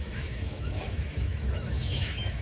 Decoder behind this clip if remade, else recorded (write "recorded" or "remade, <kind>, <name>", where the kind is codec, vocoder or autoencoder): remade, autoencoder, DAC-VAE